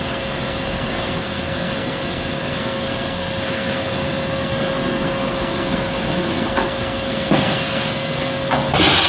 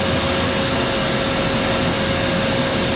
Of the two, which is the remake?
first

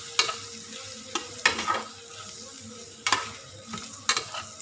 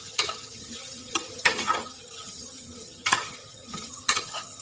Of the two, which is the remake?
second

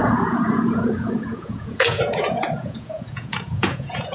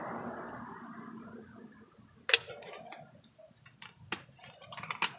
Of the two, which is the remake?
first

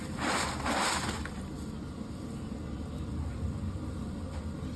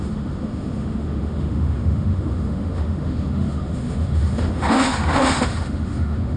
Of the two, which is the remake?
second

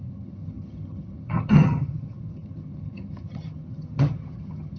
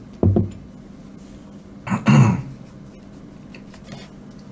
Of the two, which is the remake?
first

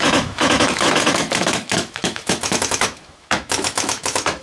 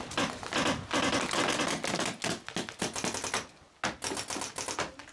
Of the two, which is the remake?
first